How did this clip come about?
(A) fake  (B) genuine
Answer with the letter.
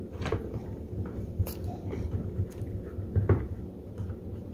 A